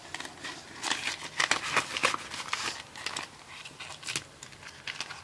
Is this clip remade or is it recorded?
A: recorded